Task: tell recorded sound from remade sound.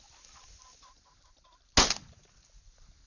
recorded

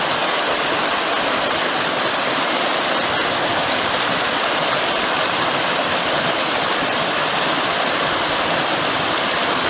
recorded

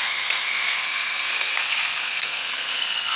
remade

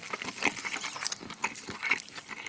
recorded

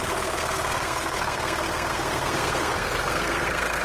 remade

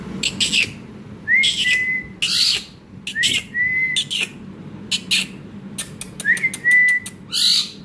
recorded